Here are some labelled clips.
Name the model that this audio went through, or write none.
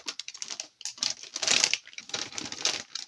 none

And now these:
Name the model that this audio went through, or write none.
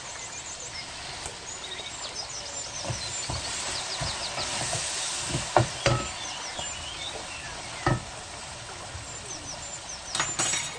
none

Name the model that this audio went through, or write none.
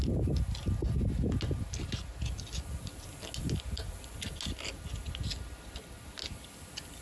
none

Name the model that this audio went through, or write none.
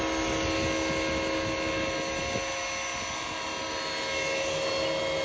none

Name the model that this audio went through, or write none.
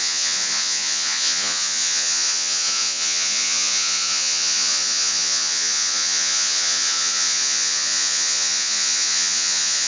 vocoder, Vocos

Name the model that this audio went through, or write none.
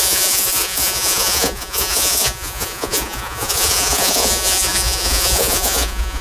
vocoder, Vocos